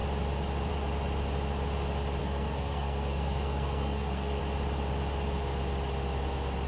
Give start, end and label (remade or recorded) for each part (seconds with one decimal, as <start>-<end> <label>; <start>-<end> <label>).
0.0-2.2 recorded; 2.2-4.4 remade; 4.4-6.7 recorded